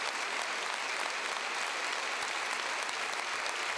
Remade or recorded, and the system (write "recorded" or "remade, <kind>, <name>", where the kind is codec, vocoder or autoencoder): recorded